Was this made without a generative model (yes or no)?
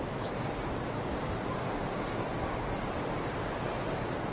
yes